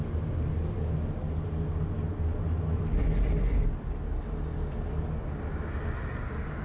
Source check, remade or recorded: recorded